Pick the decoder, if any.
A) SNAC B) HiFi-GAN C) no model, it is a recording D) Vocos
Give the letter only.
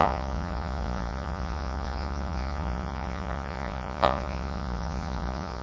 D